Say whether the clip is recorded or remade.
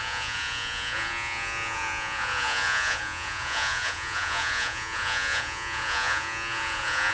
remade